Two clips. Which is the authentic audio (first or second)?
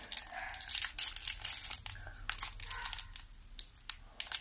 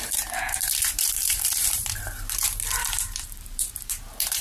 first